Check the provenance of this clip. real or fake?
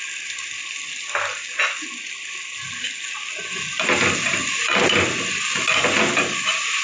real